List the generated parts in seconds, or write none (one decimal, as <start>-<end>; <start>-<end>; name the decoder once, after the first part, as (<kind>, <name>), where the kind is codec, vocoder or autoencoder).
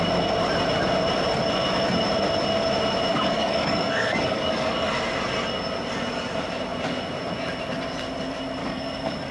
3.1-4.9 (codec, DAC); 8.6-9.3